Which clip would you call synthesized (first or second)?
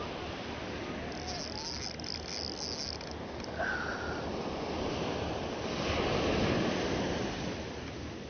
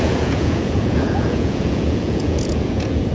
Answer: second